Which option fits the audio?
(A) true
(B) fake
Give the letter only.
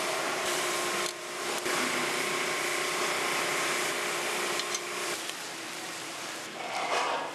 B